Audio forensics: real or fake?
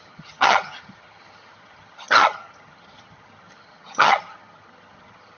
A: fake